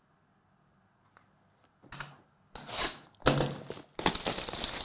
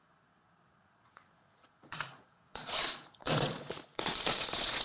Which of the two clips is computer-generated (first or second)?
second